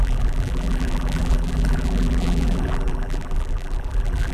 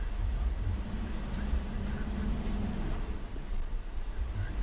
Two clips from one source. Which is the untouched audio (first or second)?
second